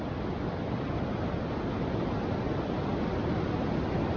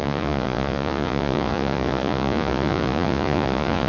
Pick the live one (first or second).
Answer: first